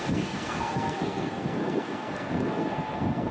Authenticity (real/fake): fake